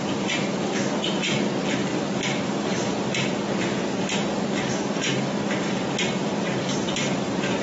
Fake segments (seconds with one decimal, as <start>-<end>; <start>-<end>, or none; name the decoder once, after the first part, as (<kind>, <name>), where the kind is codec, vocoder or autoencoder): 1.9-3.0 (vocoder, BigVGAN v2); 6.5-7.6